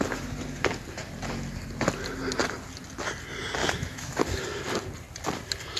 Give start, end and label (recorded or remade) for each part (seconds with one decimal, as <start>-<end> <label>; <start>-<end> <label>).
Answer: 0.0-3.6 recorded; 3.6-4.2 remade; 4.2-5.8 recorded